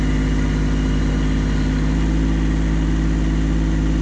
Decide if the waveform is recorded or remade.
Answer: recorded